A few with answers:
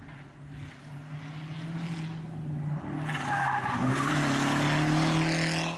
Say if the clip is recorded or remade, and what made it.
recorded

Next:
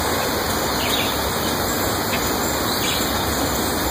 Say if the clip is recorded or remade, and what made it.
recorded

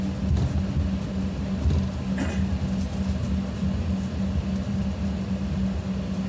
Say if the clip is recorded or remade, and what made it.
recorded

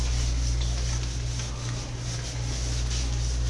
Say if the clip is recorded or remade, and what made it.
recorded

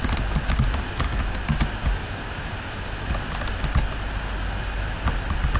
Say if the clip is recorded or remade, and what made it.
recorded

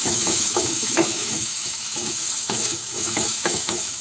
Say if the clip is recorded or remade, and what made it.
remade, autoencoder, DAC-VAE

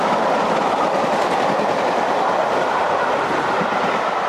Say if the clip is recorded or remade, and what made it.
recorded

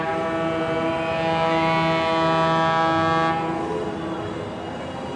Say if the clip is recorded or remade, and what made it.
recorded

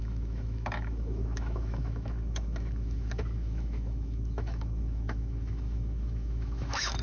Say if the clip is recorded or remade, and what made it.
remade, autoencoder, DAC-VAE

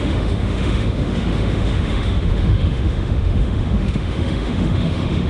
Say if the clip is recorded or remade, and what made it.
remade, autoencoder, DAC-VAE